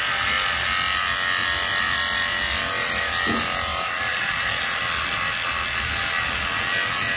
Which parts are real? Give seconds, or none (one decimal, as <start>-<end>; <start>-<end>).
0.0-1.7; 2.6-3.7; 4.6-7.2